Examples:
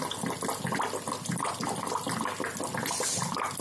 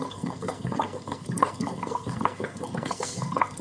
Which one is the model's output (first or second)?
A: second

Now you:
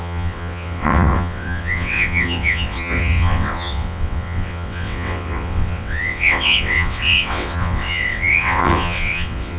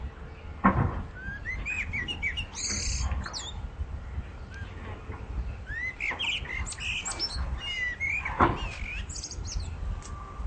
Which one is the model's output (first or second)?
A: first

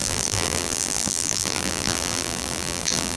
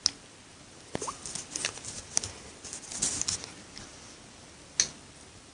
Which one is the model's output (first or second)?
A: first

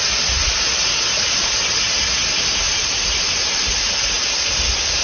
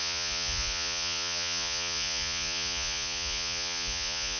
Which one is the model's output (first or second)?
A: second